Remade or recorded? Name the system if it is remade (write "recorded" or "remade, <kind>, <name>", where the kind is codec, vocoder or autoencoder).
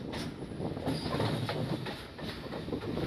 recorded